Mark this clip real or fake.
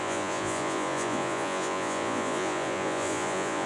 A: fake